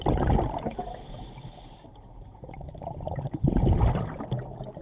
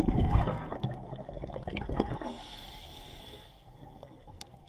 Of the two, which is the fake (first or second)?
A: second